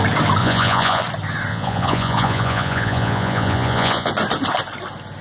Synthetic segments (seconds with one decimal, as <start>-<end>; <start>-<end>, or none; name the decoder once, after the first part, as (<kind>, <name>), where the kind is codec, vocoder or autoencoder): 0.4-1.0 (vocoder, Vocos); 1.5-4.1